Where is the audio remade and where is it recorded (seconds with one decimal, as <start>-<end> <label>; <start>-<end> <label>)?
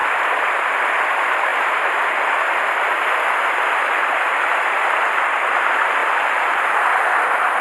0.0-1.0 remade; 1.0-6.0 recorded; 6.0-6.9 remade; 6.9-7.6 recorded